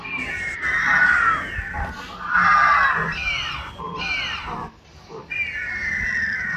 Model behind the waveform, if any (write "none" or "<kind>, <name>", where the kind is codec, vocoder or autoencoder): none